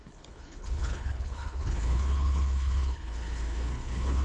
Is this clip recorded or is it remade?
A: remade